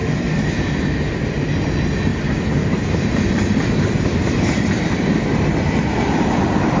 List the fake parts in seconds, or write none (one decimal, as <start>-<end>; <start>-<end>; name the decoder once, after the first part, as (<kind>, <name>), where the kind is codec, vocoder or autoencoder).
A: 0.0-0.7 (vocoder, BigVGAN v2); 2.1-6.2